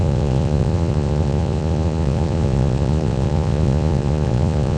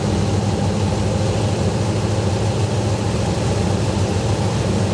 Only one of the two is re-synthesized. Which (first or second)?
first